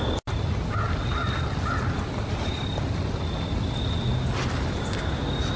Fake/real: real